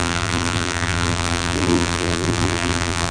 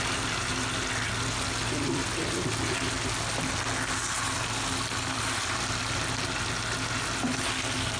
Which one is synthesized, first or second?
first